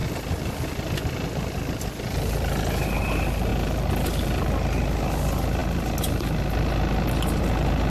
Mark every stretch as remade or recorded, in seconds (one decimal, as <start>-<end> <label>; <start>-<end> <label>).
0.0-7.9 recorded